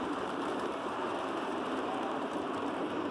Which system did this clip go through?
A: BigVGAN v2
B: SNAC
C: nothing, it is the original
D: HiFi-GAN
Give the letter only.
A